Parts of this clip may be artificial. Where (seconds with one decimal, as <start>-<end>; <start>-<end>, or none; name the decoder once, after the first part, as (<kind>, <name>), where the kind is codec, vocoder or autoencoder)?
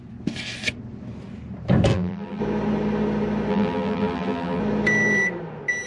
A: 1.9-2.4 (vocoder, BigVGAN v2); 3.5-4.6